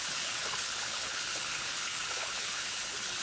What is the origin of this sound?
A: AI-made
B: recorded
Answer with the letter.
A